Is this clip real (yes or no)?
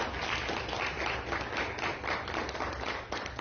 yes